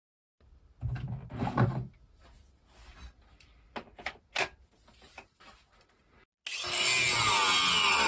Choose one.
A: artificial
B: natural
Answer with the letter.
B